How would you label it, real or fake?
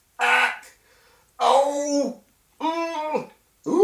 fake